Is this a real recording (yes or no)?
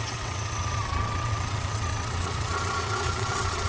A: no